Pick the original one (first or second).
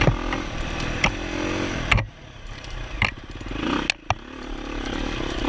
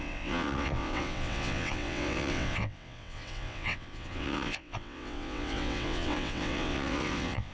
first